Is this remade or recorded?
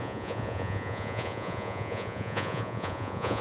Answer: remade